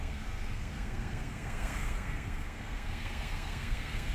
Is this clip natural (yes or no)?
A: no